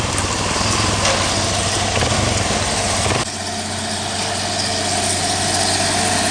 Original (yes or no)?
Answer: yes